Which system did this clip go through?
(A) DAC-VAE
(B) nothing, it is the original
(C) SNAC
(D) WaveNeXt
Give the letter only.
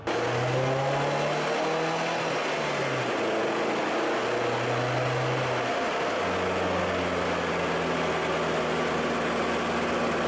B